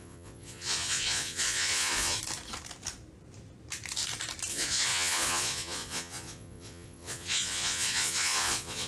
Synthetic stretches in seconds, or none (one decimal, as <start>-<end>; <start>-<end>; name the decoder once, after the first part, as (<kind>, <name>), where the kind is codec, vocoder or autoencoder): 0.0-2.2 (vocoder, Vocos); 4.5-8.9